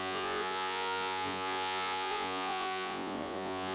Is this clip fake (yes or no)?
yes